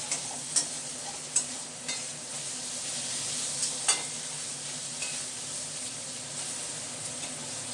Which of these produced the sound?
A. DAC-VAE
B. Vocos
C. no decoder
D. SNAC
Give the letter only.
C